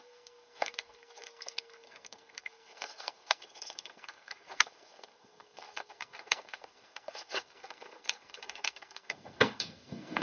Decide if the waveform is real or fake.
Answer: fake